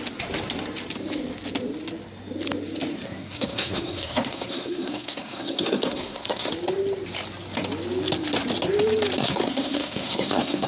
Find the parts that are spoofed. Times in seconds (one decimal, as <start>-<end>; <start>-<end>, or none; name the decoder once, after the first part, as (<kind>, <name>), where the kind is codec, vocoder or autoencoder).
2.9-6.5 (codec, SNAC); 9.2-10.7